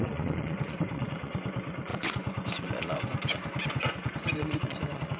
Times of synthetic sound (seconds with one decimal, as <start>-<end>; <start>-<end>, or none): 0.0-5.2